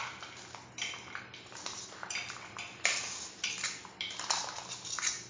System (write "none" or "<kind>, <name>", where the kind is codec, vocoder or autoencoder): none